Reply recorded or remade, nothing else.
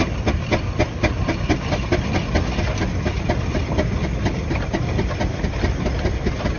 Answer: recorded